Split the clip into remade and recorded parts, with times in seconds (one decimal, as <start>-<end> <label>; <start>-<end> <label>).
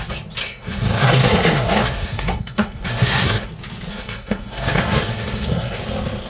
0.0-0.4 recorded; 0.4-3.5 remade; 3.5-3.9 recorded; 3.9-5.8 remade; 5.8-6.3 recorded